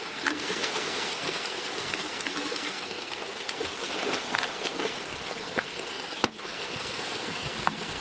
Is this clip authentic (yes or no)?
no